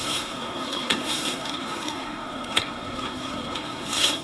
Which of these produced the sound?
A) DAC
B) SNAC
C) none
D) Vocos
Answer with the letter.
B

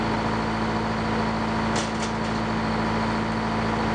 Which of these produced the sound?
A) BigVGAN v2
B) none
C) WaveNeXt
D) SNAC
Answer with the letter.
B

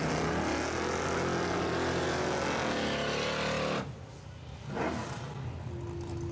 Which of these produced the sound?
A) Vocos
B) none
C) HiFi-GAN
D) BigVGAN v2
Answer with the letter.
B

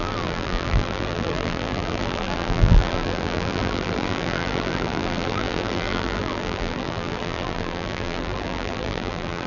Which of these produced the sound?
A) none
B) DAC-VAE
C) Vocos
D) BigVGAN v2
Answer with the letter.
D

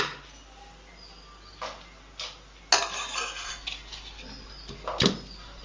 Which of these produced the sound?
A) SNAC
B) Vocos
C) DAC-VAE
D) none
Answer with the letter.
D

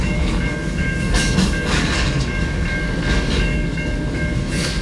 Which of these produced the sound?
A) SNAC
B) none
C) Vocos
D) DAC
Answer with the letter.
D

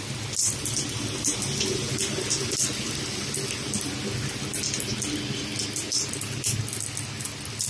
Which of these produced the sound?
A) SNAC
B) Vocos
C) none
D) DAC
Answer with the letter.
C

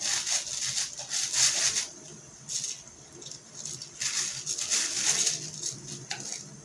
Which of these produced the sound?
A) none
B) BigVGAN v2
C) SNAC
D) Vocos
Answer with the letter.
A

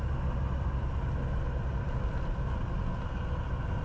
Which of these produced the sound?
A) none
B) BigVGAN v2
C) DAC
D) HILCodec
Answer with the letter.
A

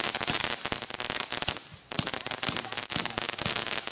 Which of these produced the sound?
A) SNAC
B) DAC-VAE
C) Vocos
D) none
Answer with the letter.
D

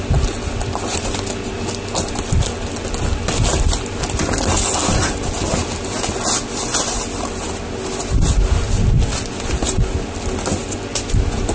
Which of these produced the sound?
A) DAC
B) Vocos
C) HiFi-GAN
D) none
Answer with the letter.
D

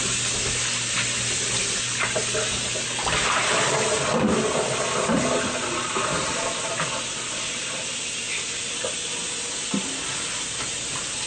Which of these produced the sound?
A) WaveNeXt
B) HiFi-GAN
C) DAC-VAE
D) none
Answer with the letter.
D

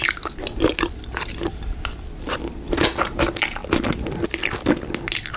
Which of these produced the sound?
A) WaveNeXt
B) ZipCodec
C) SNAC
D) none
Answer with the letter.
D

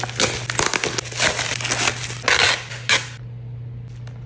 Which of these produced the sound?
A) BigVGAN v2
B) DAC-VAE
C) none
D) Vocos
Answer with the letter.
C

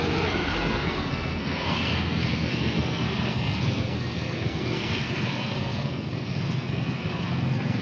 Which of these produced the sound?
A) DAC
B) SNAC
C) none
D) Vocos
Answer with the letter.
B